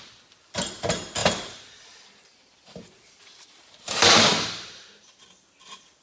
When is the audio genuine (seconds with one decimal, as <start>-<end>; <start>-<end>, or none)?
0.0-1.2; 4.8-6.0